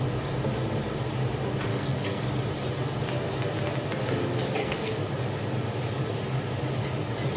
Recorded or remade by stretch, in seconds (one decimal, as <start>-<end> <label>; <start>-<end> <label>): 0.0-1.7 recorded; 1.7-2.3 remade; 2.3-4.6 recorded; 4.6-5.1 remade; 5.1-7.4 recorded